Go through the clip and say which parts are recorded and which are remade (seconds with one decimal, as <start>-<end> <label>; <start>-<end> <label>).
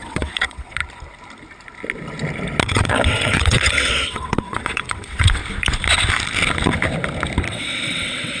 0.0-0.8 remade; 0.8-2.6 recorded; 2.6-5.4 remade; 5.4-7.5 recorded; 7.5-8.4 remade